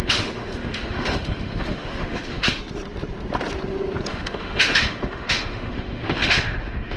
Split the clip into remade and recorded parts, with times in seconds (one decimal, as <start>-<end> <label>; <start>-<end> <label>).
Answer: 0.0-2.6 remade; 2.6-4.1 recorded; 4.1-7.0 remade